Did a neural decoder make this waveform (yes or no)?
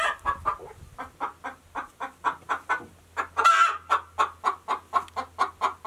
no